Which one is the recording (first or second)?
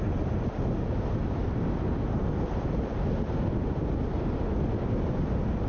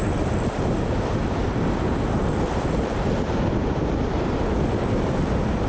first